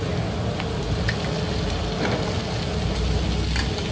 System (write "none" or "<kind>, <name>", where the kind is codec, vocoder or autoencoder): none